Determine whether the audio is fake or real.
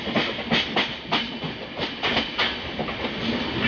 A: real